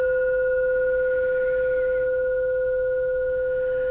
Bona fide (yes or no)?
yes